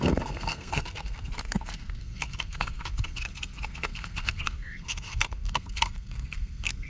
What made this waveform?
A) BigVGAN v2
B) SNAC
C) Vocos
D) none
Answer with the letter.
B